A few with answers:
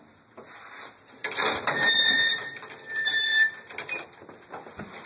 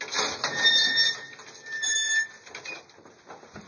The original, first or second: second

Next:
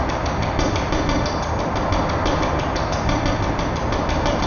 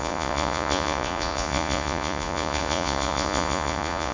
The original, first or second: first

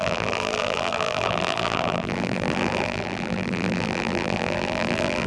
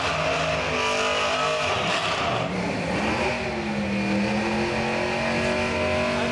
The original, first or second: second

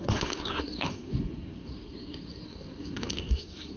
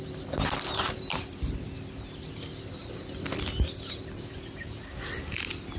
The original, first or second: second